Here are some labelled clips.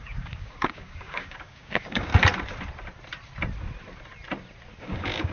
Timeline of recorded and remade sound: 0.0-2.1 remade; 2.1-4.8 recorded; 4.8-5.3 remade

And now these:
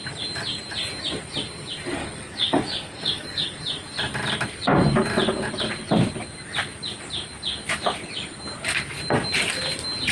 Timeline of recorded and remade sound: 0.0-2.0 recorded; 2.0-3.6 remade; 3.6-10.1 recorded

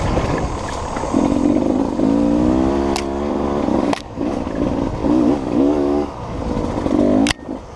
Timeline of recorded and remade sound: 0.0-3.7 recorded; 3.7-4.4 remade; 4.4-5.0 recorded; 5.0-6.4 remade; 6.4-7.8 recorded

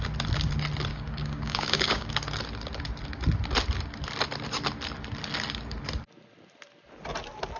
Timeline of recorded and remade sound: 0.0-0.9 recorded; 0.9-2.1 remade; 2.1-7.6 recorded